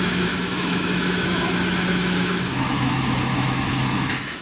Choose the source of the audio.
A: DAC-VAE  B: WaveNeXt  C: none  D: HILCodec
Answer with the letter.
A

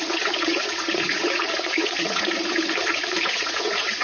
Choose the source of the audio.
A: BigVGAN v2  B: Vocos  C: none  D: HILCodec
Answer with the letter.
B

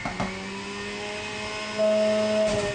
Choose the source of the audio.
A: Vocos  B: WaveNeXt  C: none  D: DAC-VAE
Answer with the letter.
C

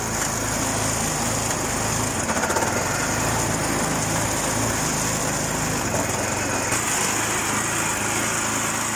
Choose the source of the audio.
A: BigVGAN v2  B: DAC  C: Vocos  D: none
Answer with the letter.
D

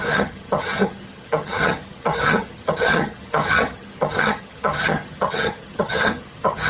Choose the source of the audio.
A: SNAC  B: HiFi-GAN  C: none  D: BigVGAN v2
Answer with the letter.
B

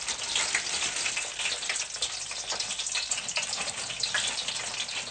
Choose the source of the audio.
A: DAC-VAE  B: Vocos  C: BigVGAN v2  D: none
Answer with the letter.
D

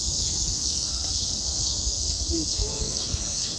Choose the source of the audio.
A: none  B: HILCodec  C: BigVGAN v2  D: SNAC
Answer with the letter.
D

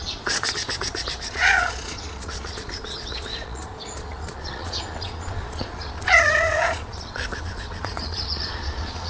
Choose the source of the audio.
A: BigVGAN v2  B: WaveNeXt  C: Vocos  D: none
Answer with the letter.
C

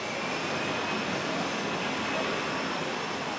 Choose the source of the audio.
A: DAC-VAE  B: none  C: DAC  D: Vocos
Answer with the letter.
B